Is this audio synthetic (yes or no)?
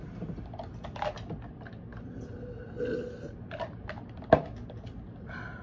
no